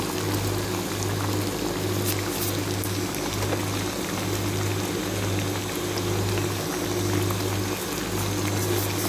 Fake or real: real